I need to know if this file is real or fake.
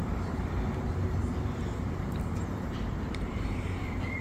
fake